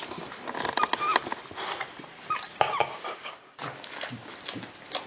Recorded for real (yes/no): yes